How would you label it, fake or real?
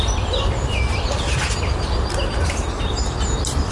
real